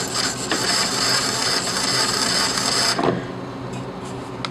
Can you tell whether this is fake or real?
real